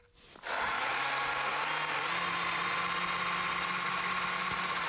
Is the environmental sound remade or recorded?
recorded